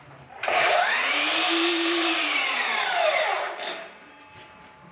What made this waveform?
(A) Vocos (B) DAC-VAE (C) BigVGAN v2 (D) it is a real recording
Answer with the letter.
C